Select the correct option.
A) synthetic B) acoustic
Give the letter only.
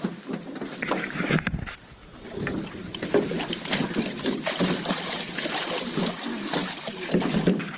B